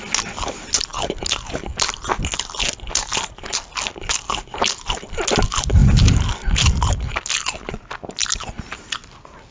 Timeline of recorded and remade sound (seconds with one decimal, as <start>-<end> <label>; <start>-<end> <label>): 0.0-9.5 recorded